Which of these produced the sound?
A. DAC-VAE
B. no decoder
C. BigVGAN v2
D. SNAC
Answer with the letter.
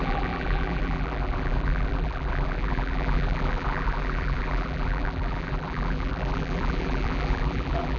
C